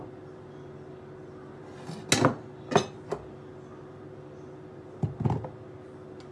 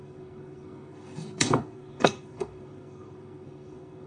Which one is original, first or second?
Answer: first